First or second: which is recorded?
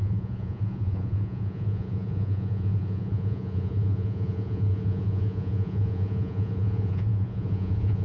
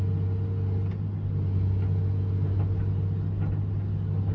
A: second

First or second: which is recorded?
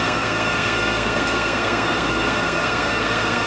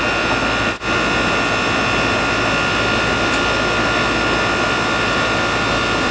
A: second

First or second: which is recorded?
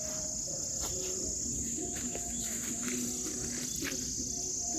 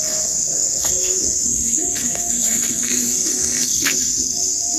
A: first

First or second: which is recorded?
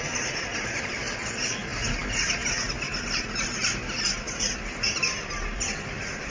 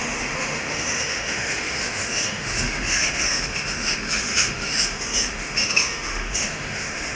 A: first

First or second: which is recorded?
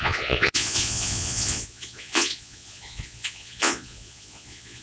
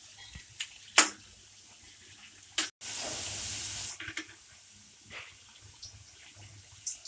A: second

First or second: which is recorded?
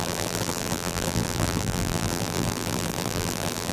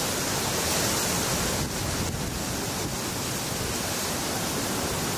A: second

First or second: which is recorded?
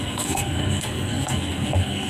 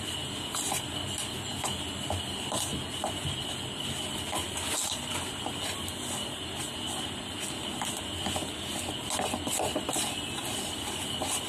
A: second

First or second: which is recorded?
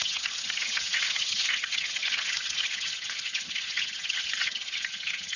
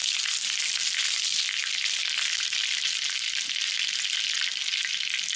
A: second